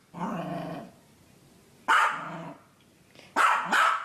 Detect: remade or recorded recorded